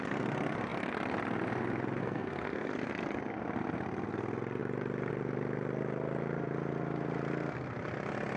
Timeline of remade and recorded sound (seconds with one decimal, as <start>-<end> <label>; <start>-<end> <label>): 0.0-2.0 recorded; 2.0-2.7 remade; 2.7-8.4 recorded